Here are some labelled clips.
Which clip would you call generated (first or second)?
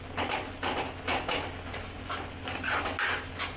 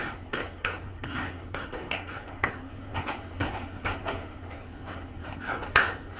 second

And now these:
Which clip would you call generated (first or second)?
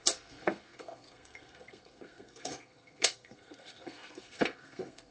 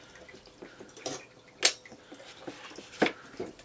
first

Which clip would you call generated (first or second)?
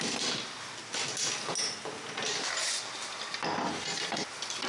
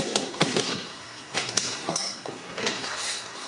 second